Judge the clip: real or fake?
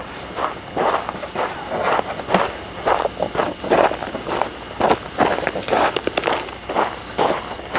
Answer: real